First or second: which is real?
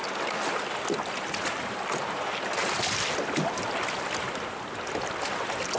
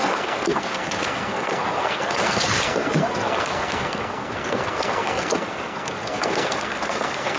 first